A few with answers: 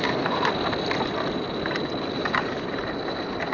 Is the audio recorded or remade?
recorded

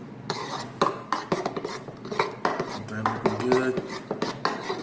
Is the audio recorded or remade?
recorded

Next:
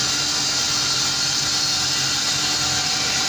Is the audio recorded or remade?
recorded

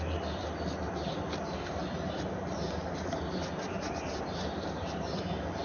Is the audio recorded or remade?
recorded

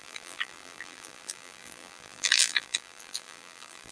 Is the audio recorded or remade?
remade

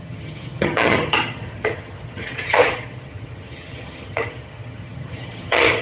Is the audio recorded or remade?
remade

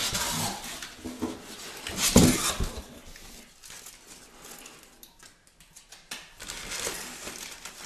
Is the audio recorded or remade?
recorded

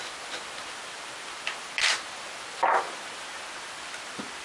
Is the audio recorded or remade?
recorded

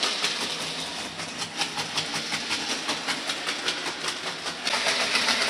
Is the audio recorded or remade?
recorded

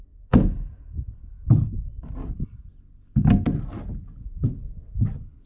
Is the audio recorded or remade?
recorded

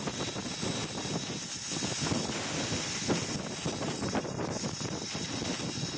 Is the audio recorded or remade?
recorded